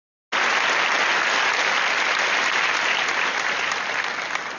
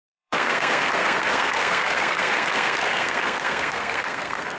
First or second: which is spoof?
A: second